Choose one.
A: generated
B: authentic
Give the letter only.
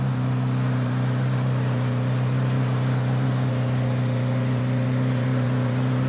B